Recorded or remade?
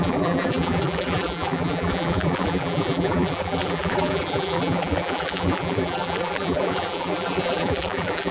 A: remade